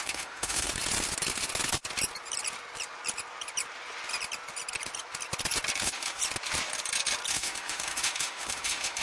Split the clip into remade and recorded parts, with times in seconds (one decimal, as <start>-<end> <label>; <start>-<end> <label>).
0.0-0.7 remade; 0.7-5.8 recorded; 5.8-6.2 remade; 6.2-7.3 recorded; 7.3-9.0 remade